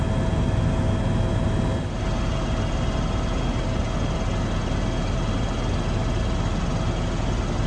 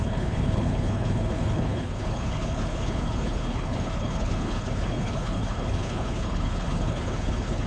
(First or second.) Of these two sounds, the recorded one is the first